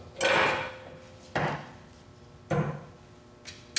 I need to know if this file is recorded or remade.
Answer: recorded